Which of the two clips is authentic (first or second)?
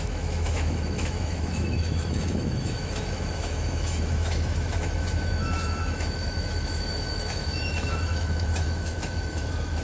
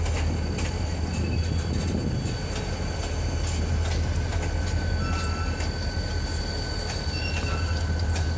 second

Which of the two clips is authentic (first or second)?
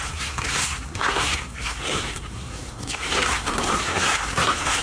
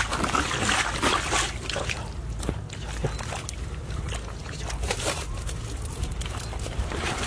second